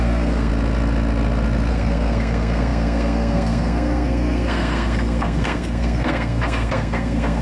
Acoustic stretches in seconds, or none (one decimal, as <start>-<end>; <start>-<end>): 0.5-1.7